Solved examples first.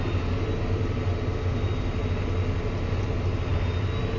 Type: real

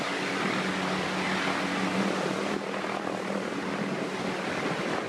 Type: real